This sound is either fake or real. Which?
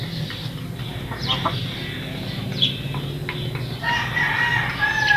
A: real